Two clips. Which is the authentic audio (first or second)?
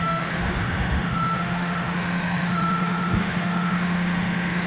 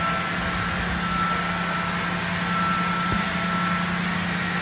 second